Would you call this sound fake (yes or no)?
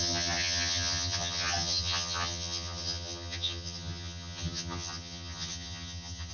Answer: yes